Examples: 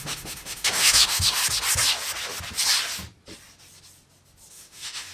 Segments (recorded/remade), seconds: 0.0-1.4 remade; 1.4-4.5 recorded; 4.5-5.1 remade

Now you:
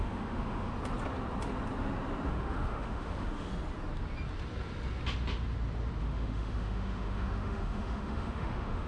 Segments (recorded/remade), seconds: 0.0-0.7 remade; 0.7-2.3 recorded; 2.3-3.5 remade; 3.5-6.0 recorded; 6.0-8.9 remade

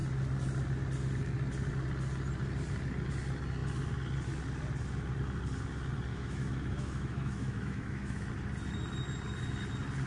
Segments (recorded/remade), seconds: 0.0-6.1 recorded; 6.1-8.3 remade; 8.3-10.1 recorded

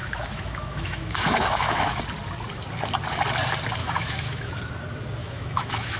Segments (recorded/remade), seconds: 0.0-2.0 remade; 2.0-3.8 recorded; 3.8-4.6 remade; 4.6-5.2 recorded; 5.2-6.0 remade